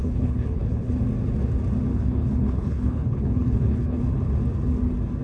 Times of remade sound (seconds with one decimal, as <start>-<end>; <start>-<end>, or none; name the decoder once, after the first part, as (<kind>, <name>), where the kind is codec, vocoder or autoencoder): 0.0-0.9 (codec, HILCodec); 1.9-4.0